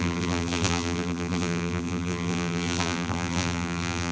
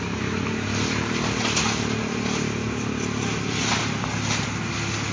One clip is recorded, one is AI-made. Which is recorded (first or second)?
second